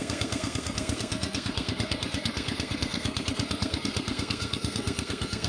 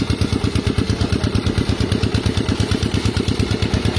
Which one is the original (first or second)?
second